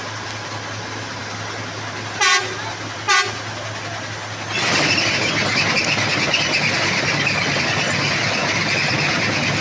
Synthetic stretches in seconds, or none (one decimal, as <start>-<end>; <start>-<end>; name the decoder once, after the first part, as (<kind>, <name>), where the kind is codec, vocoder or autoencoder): none